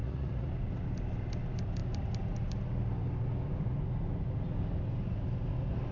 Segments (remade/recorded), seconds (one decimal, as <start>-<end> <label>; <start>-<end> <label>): 0.0-0.5 remade; 0.5-5.9 recorded